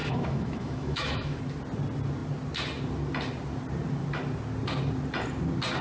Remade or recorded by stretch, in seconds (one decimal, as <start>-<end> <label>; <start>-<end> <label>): 0.0-1.4 remade; 1.4-5.8 recorded